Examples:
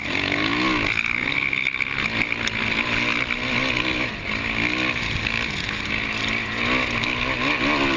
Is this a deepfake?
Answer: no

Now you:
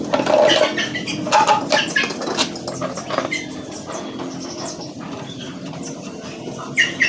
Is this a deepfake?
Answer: no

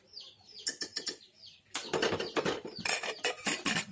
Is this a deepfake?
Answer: no